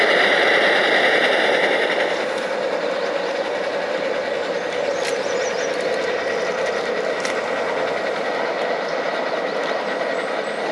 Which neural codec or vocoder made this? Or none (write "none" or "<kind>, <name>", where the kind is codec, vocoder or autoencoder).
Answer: none